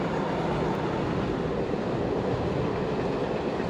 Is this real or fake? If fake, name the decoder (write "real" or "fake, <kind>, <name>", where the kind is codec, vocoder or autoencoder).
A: real